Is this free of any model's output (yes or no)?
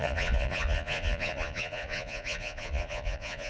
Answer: no